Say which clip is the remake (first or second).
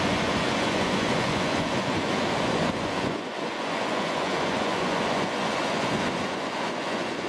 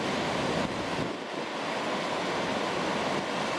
first